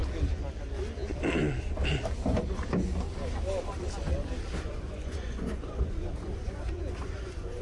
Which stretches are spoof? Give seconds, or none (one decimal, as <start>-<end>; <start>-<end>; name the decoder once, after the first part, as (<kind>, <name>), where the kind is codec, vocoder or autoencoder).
4.6-7.6 (vocoder, Vocos)